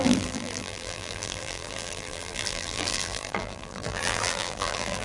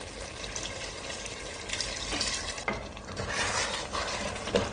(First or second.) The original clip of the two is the second